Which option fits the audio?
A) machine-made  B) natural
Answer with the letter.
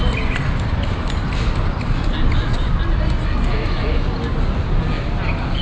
B